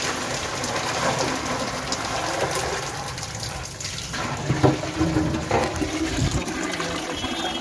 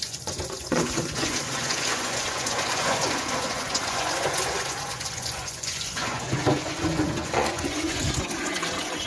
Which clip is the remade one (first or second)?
second